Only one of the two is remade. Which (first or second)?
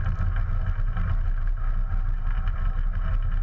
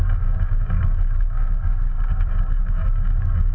second